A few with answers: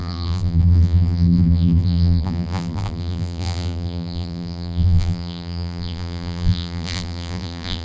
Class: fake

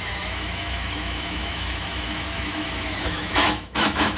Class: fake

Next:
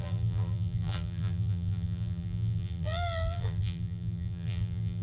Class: fake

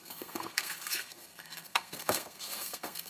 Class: fake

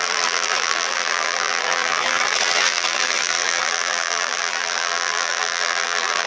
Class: fake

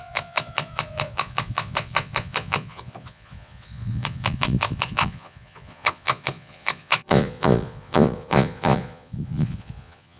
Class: fake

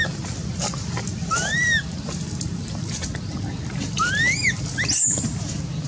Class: real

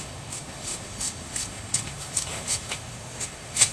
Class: fake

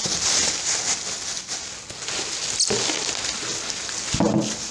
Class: real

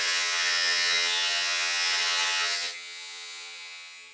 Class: fake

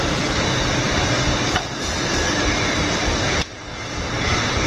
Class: real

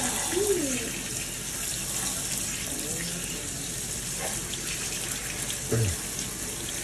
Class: real